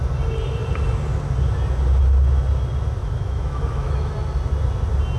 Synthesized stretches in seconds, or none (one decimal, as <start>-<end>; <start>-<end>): 3.0-4.1